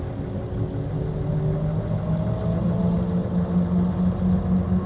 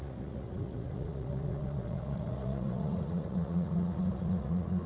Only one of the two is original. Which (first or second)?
first